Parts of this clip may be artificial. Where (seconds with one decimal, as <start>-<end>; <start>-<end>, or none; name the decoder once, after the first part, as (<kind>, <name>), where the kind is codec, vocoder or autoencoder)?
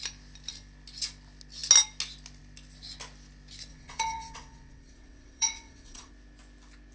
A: 3.7-6.1 (vocoder, WaveNeXt)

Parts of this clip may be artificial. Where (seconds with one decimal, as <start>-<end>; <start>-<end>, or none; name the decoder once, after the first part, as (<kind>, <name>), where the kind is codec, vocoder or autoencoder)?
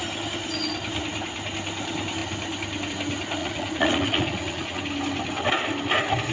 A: 3.4-4.8 (vocoder, Vocos)